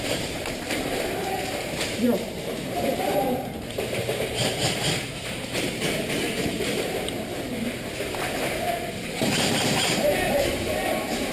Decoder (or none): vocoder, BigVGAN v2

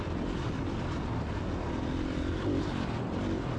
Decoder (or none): vocoder, BigVGAN v2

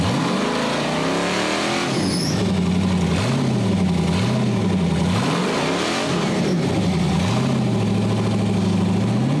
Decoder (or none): none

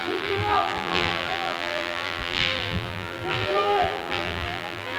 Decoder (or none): vocoder, BigVGAN v2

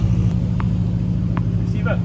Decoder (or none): none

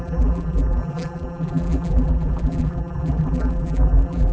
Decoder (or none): vocoder, BigVGAN v2